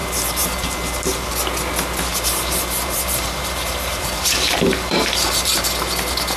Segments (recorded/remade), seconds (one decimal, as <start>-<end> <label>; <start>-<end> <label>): 0.0-2.1 recorded; 2.1-5.9 remade; 5.9-6.4 recorded